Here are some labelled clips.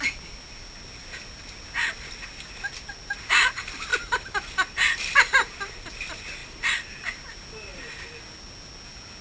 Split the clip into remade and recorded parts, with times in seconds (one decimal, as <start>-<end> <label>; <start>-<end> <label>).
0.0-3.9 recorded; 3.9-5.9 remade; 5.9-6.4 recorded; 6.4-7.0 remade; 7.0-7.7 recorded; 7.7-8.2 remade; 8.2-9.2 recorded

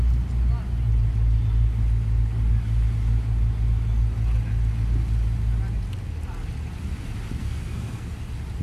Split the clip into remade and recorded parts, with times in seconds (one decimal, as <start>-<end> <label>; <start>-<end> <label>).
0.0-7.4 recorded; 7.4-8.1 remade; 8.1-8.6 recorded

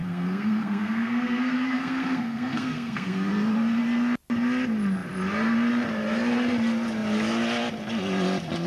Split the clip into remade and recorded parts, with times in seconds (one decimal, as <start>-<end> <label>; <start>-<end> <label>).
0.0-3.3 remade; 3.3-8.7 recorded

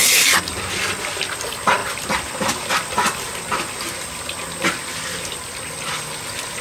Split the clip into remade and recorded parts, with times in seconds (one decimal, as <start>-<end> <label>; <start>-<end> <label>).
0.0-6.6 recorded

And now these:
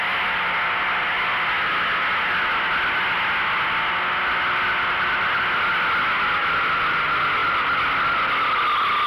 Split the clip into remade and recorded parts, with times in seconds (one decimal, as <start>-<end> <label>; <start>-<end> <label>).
0.0-9.1 recorded

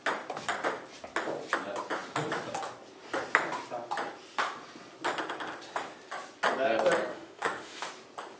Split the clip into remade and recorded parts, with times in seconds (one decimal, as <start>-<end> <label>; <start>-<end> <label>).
0.0-7.1 recorded; 7.1-7.9 remade; 7.9-8.4 recorded

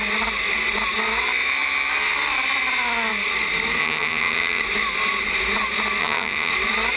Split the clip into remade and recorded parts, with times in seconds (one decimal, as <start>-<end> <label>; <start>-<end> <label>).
0.0-3.8 recorded; 3.8-4.6 remade; 4.6-6.0 recorded; 6.0-6.5 remade; 6.5-7.0 recorded

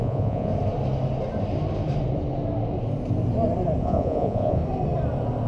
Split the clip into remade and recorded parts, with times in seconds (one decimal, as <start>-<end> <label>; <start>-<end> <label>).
0.0-0.5 remade; 0.5-3.8 recorded; 3.8-4.6 remade; 4.6-5.5 recorded